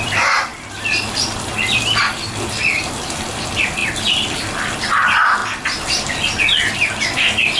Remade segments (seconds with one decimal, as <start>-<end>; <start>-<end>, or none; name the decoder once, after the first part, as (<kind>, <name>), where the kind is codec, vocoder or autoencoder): 0.0-5.4 (vocoder, BigVGAN v2)